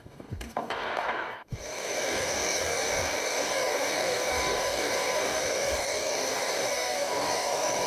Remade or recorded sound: remade